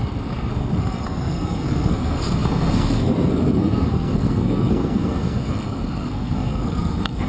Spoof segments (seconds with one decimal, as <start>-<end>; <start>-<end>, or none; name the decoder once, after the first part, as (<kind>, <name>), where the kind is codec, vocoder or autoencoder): 0.0-7.3 (codec, SNAC)